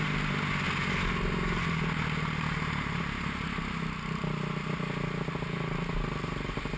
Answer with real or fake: real